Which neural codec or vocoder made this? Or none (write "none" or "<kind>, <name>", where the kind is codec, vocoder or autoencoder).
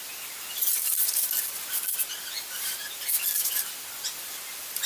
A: none